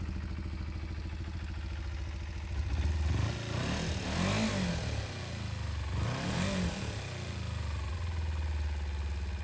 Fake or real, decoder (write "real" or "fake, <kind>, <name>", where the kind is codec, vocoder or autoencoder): real